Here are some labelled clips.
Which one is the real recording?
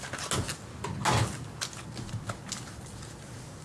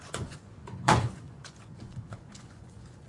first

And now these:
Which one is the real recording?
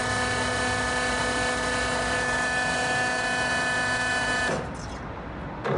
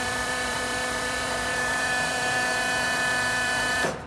first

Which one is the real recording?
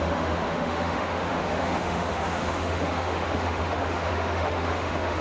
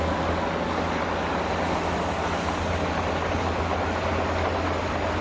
second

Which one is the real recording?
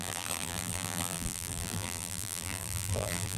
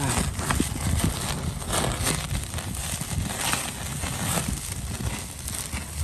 second